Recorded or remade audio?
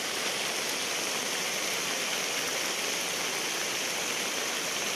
recorded